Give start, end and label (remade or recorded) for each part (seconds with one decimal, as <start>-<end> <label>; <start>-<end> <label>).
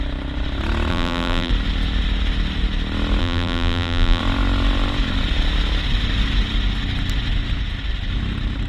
0.0-0.9 recorded; 0.9-1.5 remade; 1.5-3.2 recorded; 3.2-4.2 remade; 4.2-8.7 recorded